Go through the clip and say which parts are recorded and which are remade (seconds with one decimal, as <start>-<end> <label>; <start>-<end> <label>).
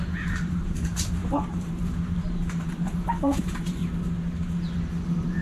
0.0-3.8 remade; 3.8-5.4 recorded